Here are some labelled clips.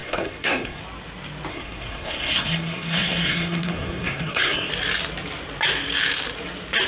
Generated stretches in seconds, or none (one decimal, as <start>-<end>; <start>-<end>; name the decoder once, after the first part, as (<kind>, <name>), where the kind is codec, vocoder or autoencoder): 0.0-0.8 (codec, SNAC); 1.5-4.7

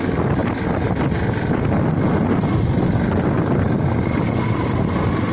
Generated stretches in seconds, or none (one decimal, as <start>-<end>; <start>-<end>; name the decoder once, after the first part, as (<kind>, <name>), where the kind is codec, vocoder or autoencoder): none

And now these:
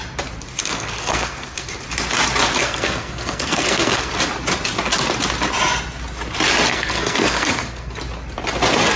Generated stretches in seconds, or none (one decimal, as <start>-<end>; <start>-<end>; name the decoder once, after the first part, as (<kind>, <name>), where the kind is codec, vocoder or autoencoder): 0.6-1.7 (codec, SNAC); 2.6-4.1; 6.7-7.9